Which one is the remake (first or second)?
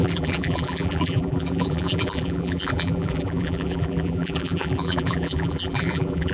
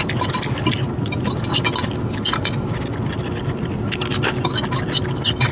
first